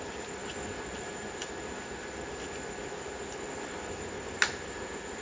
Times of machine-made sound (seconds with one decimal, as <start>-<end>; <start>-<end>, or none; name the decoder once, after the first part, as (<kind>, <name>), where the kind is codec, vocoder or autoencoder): none